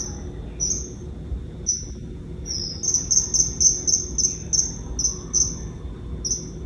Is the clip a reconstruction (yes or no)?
no